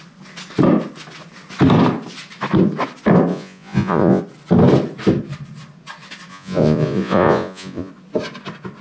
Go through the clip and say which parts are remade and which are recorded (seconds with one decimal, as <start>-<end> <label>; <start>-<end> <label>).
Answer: 0.0-3.3 recorded; 3.3-4.2 remade; 4.2-6.3 recorded; 6.3-7.9 remade; 7.9-8.8 recorded